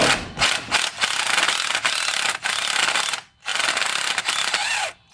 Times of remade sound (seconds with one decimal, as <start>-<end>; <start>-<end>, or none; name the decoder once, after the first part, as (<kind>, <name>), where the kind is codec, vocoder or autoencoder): none